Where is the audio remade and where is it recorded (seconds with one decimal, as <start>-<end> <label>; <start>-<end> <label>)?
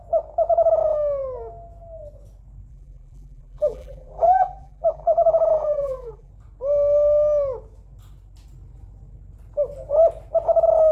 0.0-2.7 recorded; 2.7-6.3 remade; 6.3-10.9 recorded